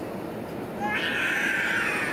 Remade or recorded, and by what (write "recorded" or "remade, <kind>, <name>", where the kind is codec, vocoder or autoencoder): recorded